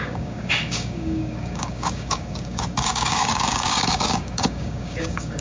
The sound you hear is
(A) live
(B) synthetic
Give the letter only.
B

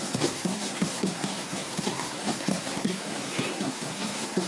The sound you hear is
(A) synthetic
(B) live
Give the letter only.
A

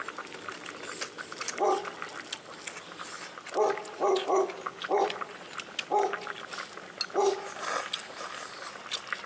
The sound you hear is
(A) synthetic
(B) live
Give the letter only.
B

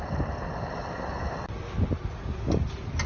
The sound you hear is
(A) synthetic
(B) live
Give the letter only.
B